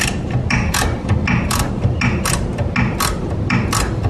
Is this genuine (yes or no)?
yes